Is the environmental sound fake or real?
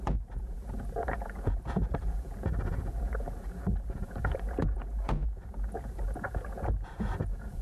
fake